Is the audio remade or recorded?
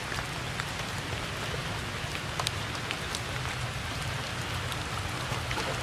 recorded